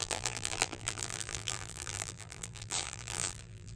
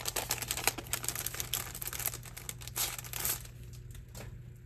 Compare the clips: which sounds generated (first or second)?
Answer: first